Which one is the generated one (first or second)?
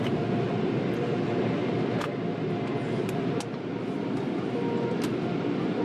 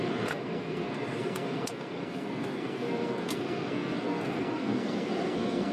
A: second